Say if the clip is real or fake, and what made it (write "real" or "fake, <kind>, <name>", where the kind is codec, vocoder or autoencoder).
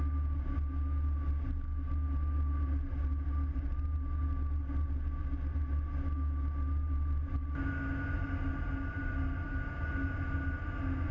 real